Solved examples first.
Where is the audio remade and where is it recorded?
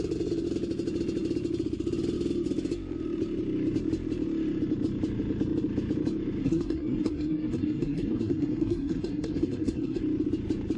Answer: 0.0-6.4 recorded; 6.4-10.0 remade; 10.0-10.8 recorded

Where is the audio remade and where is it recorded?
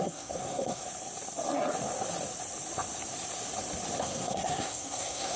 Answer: 0.0-0.8 remade; 0.8-4.0 recorded; 4.0-5.4 remade